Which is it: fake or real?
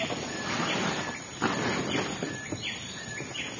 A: real